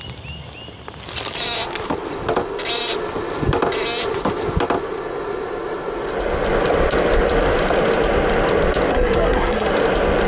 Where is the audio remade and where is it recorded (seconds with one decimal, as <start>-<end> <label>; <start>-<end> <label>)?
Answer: 0.0-8.9 recorded; 8.9-9.7 remade; 9.7-10.3 recorded